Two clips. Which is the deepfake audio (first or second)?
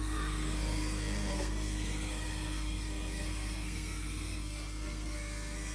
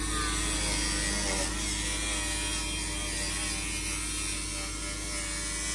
first